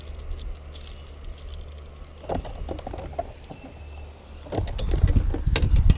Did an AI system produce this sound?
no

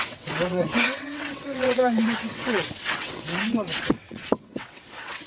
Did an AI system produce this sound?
yes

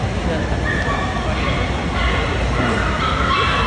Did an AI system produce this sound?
no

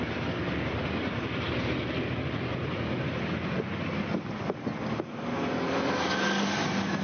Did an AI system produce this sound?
no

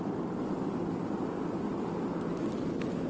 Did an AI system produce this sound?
no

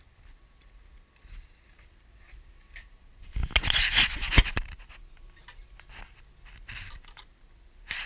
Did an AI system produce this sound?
no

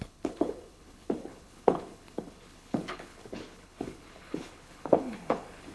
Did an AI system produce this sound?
yes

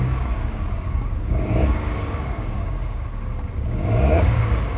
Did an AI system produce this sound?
yes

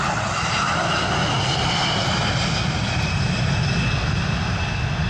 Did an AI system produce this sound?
no